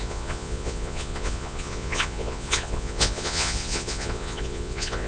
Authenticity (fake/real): fake